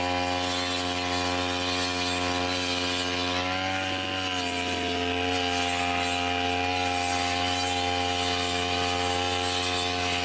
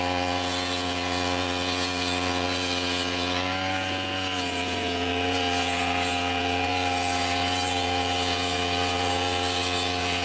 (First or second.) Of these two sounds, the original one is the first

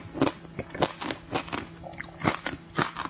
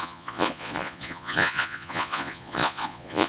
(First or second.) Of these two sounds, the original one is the first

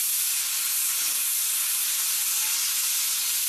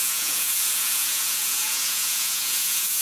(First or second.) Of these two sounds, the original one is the first